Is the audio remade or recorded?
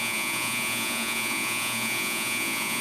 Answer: remade